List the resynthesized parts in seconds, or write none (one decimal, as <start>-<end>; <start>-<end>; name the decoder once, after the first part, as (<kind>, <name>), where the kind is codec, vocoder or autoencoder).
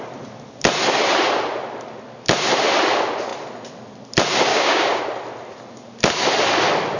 4.5-5.0 (codec, DAC)